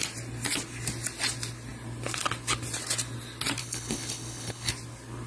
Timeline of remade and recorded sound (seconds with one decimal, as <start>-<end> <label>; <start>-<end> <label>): 0.0-3.6 recorded; 3.6-4.7 remade; 4.7-5.3 recorded